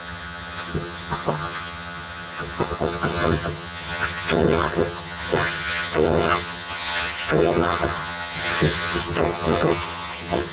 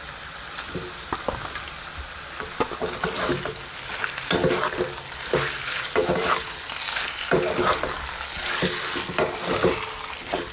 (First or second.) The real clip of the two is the second